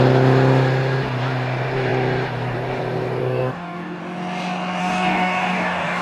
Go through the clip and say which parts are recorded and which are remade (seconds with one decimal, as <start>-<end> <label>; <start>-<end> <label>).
0.0-3.2 recorded; 3.2-4.0 remade; 4.0-4.8 recorded; 4.8-6.0 remade